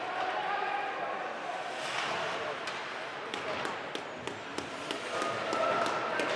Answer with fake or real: real